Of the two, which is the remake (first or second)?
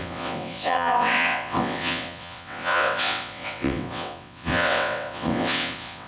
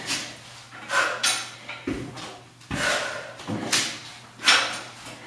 first